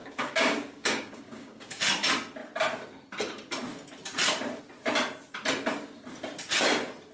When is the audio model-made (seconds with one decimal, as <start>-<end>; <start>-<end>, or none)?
0.0-1.8

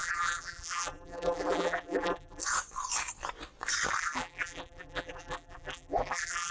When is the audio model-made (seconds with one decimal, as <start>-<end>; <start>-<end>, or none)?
0.0-2.4; 4.0-6.5

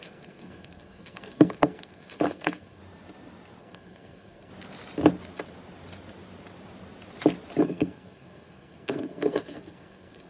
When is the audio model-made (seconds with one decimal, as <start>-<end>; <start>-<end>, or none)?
0.0-2.8; 3.6-4.5; 7.6-10.3

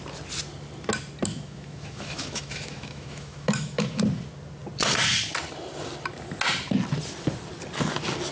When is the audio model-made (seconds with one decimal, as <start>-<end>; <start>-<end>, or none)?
1.3-4.0

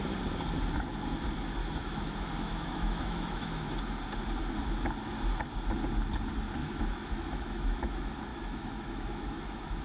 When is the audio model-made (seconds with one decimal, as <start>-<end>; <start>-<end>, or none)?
1.6-3.8; 6.6-7.9; 8.3-9.8

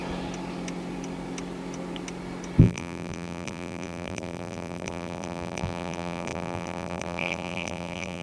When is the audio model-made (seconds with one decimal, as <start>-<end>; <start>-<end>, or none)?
2.6-8.2

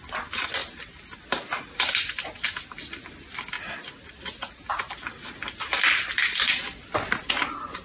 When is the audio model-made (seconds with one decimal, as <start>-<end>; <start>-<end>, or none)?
none